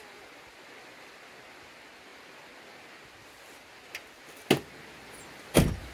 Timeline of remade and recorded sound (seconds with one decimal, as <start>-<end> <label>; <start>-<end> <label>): 0.0-5.9 recorded